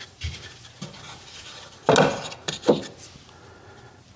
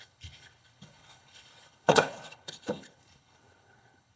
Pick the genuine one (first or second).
first